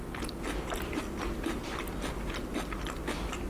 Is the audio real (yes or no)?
yes